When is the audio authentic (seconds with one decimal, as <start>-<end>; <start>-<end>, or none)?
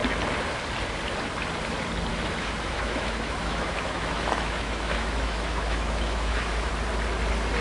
0.0-2.1; 6.7-7.6